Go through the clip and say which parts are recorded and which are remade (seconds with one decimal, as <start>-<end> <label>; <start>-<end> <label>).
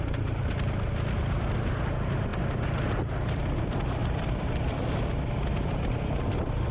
0.0-4.0 recorded; 4.0-4.8 remade; 4.8-6.7 recorded